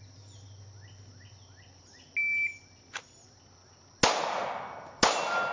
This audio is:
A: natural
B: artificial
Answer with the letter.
A